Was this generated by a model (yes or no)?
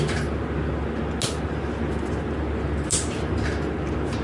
no